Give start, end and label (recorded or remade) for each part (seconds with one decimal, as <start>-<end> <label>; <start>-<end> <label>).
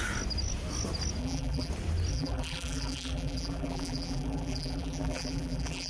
0.0-1.2 recorded; 1.2-1.7 remade; 1.7-2.1 recorded; 2.1-5.9 remade